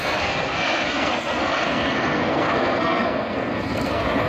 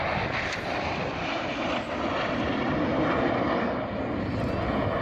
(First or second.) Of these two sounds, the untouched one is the second